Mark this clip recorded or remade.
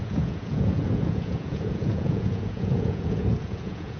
remade